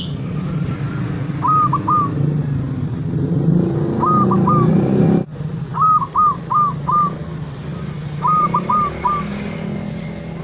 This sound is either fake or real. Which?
real